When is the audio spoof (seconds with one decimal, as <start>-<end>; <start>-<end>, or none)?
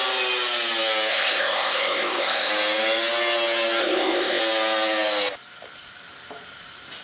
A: 1.1-2.5; 3.8-4.4